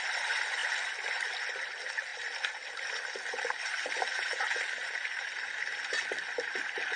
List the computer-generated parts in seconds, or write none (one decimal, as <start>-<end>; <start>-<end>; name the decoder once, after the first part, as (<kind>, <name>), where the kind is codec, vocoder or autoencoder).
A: none